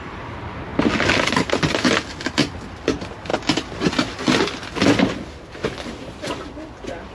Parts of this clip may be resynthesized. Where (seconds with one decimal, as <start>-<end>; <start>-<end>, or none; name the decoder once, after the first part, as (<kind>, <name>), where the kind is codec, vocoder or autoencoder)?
none